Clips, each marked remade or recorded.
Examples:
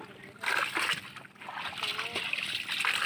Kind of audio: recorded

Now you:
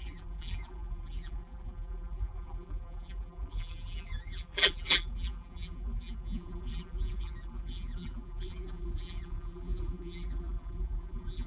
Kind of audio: remade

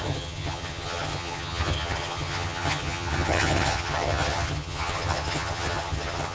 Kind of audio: remade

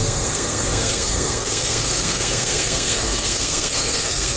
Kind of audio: remade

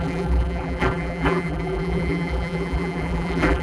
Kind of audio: remade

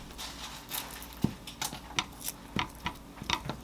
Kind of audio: recorded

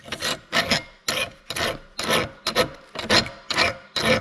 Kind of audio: recorded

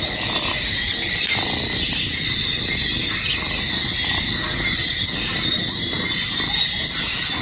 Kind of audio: recorded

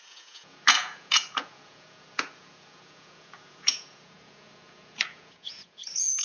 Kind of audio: remade